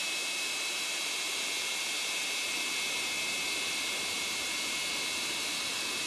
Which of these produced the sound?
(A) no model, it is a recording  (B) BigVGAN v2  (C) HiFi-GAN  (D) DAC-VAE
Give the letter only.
B